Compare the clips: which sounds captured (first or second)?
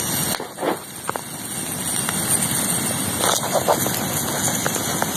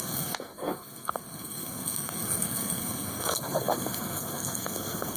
first